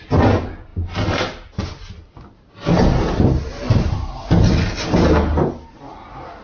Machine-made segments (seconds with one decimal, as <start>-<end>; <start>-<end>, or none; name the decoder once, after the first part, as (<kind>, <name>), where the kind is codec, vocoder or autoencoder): none